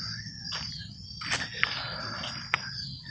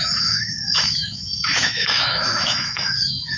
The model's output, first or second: second